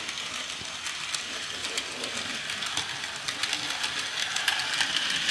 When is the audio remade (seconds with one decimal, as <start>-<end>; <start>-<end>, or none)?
none